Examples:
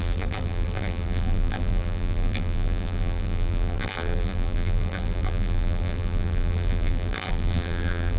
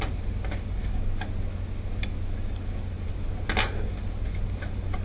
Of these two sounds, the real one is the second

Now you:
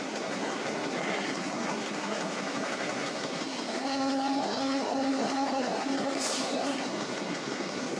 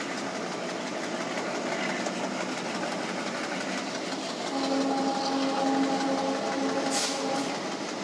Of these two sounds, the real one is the second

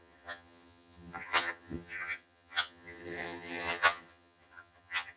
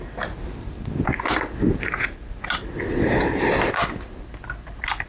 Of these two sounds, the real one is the second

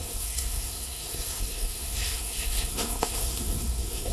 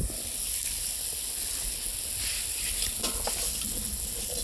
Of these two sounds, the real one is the second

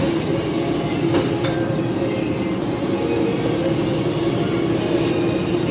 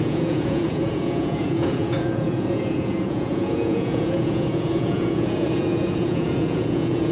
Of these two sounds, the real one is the first